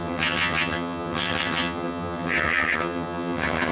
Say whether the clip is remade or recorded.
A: remade